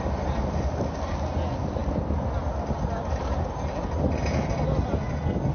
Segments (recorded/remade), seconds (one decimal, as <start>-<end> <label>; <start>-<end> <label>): 0.0-5.5 recorded